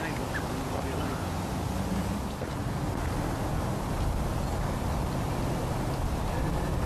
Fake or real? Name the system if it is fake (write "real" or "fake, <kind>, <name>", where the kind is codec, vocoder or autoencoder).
real